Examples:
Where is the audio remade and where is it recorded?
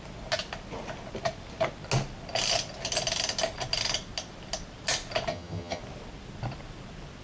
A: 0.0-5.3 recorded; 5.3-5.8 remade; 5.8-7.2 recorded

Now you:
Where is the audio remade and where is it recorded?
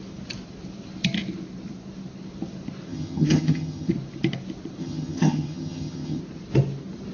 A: 0.0-2.9 recorded; 2.9-3.9 remade; 3.9-4.8 recorded; 4.8-6.2 remade; 6.2-7.1 recorded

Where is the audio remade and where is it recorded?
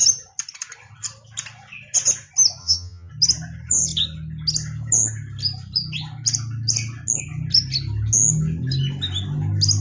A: 0.0-2.6 recorded; 2.6-3.1 remade; 3.1-9.8 recorded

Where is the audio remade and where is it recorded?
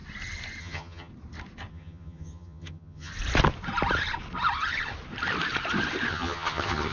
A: 0.0-0.6 recorded; 0.6-1.1 remade; 1.1-1.7 recorded; 1.7-3.1 remade; 3.1-6.1 recorded; 6.1-6.9 remade